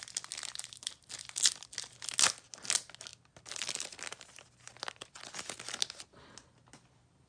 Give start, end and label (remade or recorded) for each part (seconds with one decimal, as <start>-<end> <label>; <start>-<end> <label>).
0.0-7.3 recorded